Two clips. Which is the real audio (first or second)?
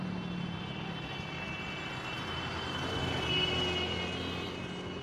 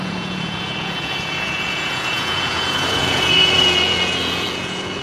first